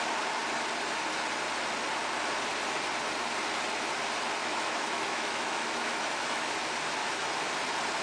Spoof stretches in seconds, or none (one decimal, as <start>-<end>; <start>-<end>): 4.4-6.5; 7.0-7.5